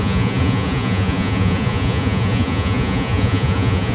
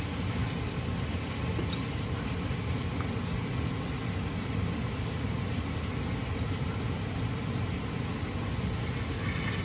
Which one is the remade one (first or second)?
first